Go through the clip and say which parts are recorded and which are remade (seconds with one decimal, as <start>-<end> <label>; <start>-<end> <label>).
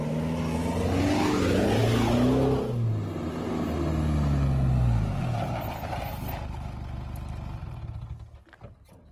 0.0-9.1 recorded